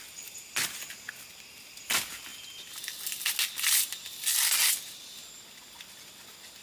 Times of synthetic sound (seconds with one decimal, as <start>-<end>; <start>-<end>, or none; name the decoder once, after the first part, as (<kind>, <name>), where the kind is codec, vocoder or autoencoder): none